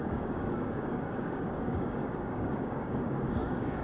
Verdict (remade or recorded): remade